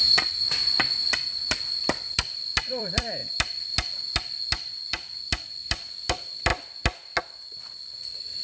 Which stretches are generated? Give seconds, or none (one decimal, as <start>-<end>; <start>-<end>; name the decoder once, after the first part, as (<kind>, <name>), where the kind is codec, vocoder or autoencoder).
0.0-3.2 (vocoder, BigVGAN v2); 4.5-6.5; 7.2-8.4